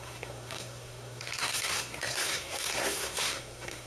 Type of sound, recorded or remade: remade